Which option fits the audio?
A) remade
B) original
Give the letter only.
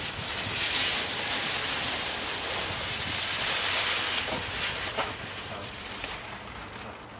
B